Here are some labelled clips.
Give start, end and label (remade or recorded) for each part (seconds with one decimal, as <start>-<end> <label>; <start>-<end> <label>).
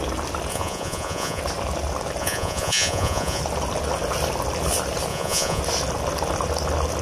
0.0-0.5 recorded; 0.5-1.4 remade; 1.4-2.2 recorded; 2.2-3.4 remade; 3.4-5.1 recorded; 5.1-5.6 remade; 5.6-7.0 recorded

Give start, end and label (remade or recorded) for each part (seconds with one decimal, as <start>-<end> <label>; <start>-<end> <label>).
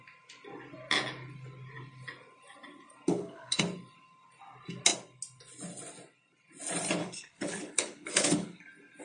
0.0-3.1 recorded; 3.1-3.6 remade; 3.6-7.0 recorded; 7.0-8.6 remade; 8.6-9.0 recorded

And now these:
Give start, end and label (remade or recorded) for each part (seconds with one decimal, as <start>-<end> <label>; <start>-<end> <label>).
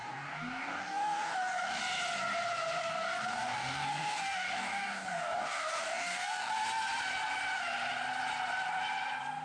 0.0-1.8 remade; 1.8-2.8 recorded; 2.8-6.5 remade; 6.5-9.4 recorded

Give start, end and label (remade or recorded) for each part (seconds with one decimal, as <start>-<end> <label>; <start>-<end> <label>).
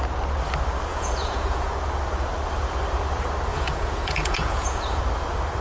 0.0-0.9 recorded; 0.9-1.7 remade; 1.7-3.5 recorded; 3.5-5.0 remade; 5.0-5.6 recorded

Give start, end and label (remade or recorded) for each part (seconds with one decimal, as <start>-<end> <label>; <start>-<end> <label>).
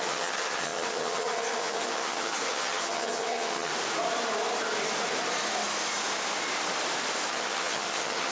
0.0-3.7 remade; 3.7-7.3 recorded; 7.3-8.3 remade